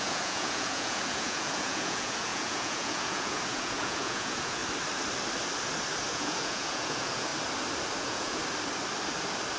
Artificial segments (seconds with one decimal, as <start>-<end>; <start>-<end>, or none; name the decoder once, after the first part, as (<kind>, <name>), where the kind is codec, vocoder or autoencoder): 0.0-4.6 (vocoder, Vocos); 6.1-7.3; 8.0-8.4